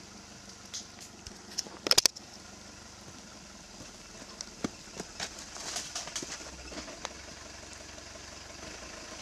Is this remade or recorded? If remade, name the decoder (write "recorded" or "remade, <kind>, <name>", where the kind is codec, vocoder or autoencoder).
recorded